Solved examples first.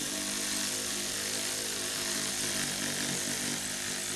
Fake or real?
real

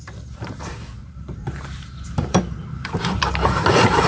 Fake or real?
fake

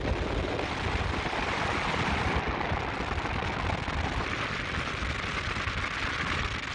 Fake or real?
real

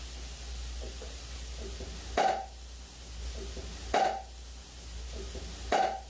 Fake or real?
real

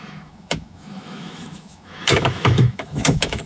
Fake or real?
fake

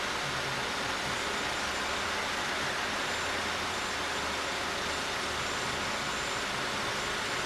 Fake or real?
real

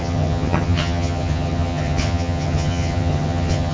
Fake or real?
fake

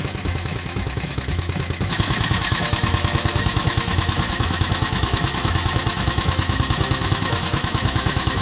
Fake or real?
fake